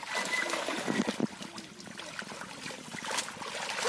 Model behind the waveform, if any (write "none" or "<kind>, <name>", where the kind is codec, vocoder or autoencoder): none